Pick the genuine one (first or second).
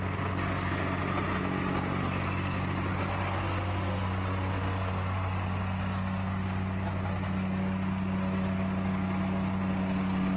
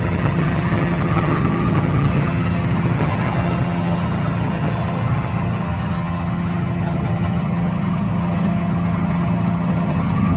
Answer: first